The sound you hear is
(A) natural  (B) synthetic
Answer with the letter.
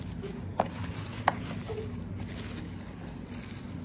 A